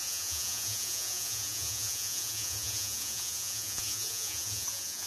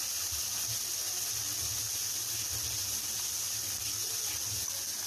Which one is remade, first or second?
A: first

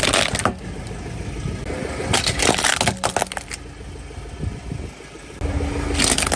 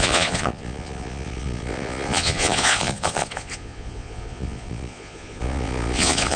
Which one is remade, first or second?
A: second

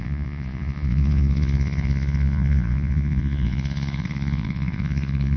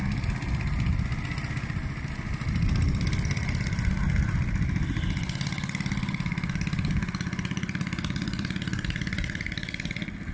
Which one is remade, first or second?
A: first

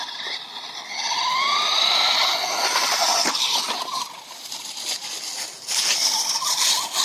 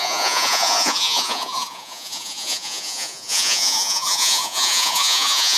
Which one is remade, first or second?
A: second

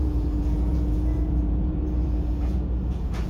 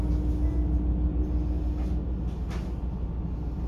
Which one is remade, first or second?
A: first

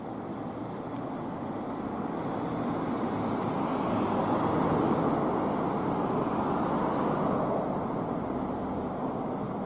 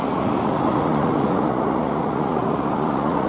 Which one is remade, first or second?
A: second